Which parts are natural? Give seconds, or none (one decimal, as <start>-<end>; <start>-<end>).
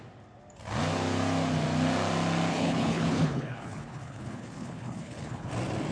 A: 0.0-2.5; 5.5-5.9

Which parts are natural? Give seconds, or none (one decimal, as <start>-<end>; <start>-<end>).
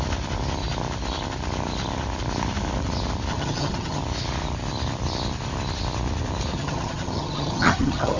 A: 0.0-3.3; 4.0-6.5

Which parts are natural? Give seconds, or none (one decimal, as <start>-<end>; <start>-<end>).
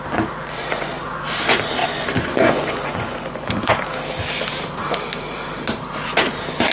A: 0.0-0.4; 1.0-1.8; 3.8-6.7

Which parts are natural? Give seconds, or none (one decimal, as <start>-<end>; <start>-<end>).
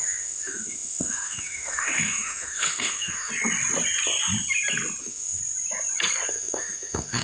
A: 3.3-5.0; 5.4-6.3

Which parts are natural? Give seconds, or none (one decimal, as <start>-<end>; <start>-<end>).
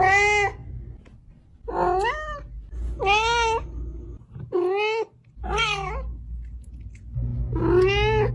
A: 0.0-8.3